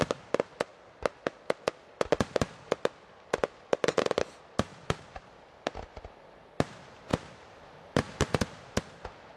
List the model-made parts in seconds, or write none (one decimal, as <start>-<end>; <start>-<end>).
7.1-8.7